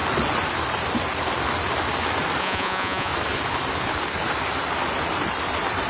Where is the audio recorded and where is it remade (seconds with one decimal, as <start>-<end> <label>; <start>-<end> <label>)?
0.0-2.4 recorded; 2.4-3.1 remade; 3.1-5.9 recorded

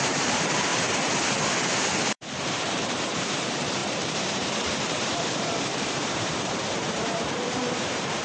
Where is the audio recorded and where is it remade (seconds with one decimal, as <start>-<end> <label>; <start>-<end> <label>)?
0.0-0.7 remade; 0.7-2.1 recorded; 2.1-8.2 remade

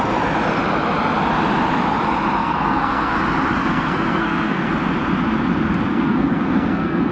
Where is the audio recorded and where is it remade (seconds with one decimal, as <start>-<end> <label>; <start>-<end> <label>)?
0.0-2.4 recorded; 2.4-3.2 remade; 3.2-3.6 recorded; 3.6-4.7 remade; 4.7-5.9 recorded; 5.9-7.1 remade

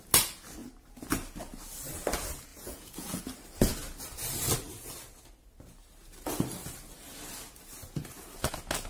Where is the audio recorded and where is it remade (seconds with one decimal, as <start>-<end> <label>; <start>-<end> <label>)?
0.0-2.5 recorded; 2.5-3.2 remade; 3.2-8.9 recorded

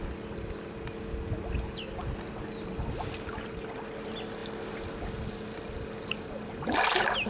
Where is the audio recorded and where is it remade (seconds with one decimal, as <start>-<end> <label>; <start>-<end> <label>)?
0.0-7.3 recorded

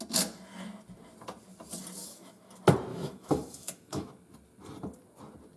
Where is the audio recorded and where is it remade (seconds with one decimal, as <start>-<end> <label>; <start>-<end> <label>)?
0.0-2.0 recorded; 2.0-2.5 remade; 2.5-2.9 recorded; 2.9-4.1 remade; 4.1-5.6 recorded

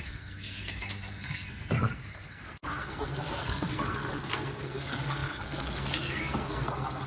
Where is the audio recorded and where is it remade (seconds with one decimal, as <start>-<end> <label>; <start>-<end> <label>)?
0.0-7.1 remade

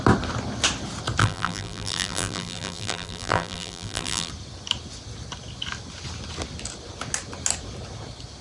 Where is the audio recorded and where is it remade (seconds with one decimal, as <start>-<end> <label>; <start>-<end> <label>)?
0.0-1.2 recorded; 1.2-4.3 remade; 4.3-8.4 recorded